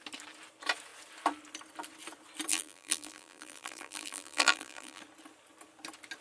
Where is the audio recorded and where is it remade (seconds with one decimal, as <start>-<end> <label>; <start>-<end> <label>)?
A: 0.0-2.5 recorded; 2.5-5.0 remade; 5.0-6.2 recorded